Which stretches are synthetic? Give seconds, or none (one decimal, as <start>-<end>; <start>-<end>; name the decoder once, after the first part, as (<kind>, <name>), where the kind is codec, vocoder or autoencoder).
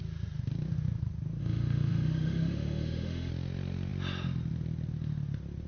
1.4-3.3 (autoencoder, DAC-VAE)